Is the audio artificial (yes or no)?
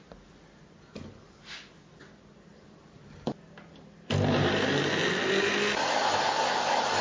no